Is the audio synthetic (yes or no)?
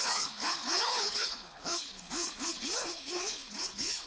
yes